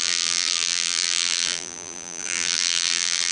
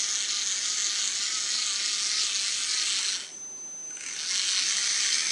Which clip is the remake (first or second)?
first